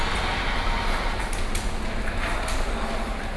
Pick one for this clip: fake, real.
real